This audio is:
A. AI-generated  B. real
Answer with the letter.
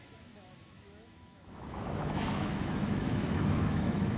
A